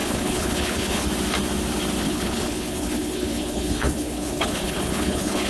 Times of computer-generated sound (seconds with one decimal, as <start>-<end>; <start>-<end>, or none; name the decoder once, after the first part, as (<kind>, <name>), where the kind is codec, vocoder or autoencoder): 0.0-1.1 (codec, HILCodec); 2.0-5.5